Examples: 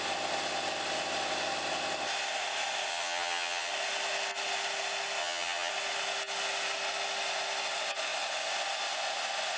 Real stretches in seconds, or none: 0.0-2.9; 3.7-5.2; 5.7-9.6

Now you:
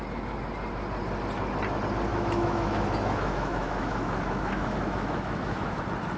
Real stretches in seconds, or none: 0.0-2.1; 5.8-6.2

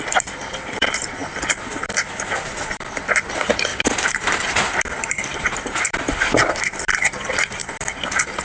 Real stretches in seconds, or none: 1.2-2.1; 7.6-8.4

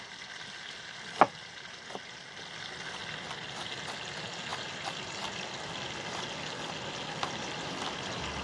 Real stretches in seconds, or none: 0.0-8.4